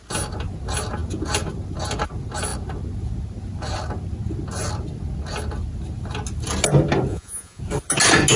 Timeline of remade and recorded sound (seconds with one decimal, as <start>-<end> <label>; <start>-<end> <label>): 0.0-7.1 recorded; 7.1-7.6 remade; 7.6-8.4 recorded

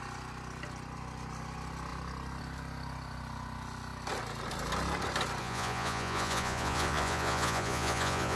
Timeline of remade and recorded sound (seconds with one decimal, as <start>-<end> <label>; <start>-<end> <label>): 0.0-5.4 recorded; 5.4-8.4 remade